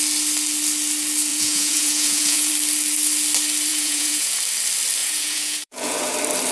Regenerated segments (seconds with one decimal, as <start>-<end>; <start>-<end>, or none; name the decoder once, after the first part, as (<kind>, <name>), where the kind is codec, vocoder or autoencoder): 1.3-2.5 (vocoder, Vocos); 3.7-4.4; 5.0-6.1